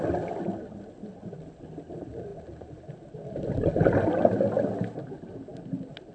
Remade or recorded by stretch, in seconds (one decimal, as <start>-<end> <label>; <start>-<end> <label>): 0.0-6.1 recorded

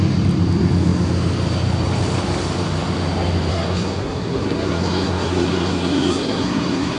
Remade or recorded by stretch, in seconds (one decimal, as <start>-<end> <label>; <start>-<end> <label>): 0.0-3.5 recorded; 3.5-7.0 remade

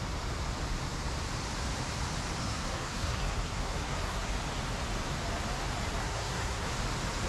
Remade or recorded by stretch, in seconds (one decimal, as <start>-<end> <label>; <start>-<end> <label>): 0.0-2.4 recorded; 2.4-4.3 remade; 4.3-6.0 recorded; 6.0-6.7 remade; 6.7-7.3 recorded

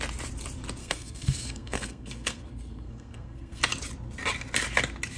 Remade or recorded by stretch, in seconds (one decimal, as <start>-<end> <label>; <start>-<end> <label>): 0.0-0.8 recorded; 0.8-3.6 remade; 3.6-5.2 recorded

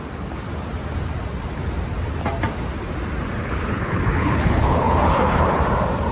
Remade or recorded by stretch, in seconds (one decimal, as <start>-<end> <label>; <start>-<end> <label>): 0.0-3.4 recorded; 3.4-5.6 remade; 5.6-6.1 recorded

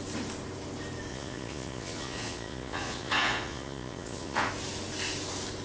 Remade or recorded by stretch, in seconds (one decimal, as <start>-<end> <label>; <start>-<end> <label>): 0.0-1.1 recorded; 1.1-4.5 remade; 4.5-5.6 recorded

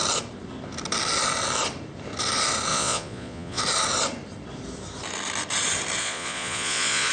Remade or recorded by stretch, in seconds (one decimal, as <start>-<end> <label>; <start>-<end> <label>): 0.0-2.7 recorded; 2.7-3.6 remade; 3.6-6.0 recorded; 6.0-7.1 remade